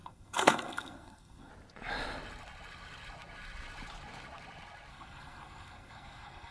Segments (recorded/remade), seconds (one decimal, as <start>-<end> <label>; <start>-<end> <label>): 0.0-1.5 remade; 1.5-4.9 recorded; 4.9-6.5 remade